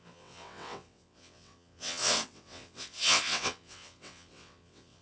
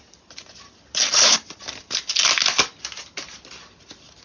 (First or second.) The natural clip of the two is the second